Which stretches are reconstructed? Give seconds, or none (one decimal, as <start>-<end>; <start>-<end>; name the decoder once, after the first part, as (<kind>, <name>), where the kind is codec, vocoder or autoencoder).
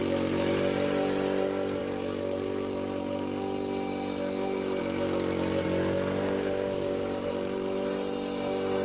6.2-7.3 (codec, DAC)